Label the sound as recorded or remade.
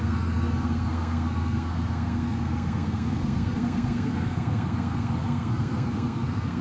remade